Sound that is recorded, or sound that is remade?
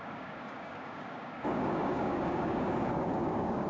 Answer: remade